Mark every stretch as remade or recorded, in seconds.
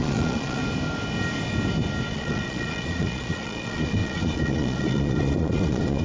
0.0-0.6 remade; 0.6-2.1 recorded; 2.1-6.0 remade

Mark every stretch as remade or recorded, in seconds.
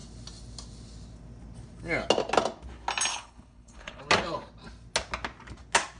0.0-3.1 recorded; 3.1-4.0 remade; 4.0-6.0 recorded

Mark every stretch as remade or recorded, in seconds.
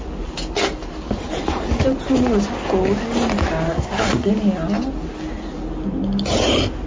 0.0-3.7 recorded; 3.7-4.3 remade; 4.3-6.9 recorded